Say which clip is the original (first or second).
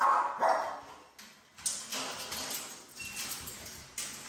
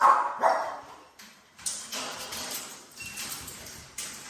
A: first